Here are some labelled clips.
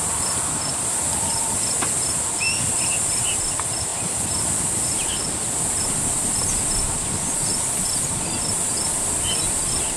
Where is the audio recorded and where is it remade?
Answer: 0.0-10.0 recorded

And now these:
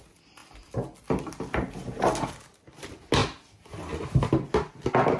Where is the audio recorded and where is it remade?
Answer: 0.0-5.2 recorded